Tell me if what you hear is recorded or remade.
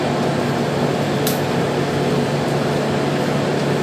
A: recorded